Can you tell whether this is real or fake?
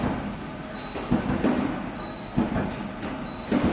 real